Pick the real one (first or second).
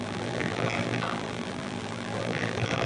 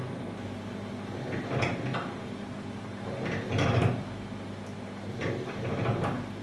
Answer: second